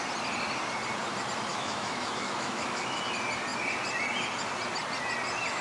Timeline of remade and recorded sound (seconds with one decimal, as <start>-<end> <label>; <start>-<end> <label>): 0.0-1.5 recorded; 1.5-3.0 remade; 3.0-5.6 recorded